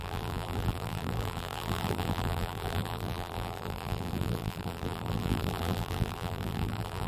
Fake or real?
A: fake